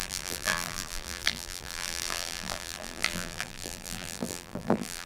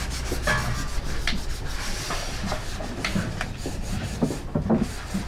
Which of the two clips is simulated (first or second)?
first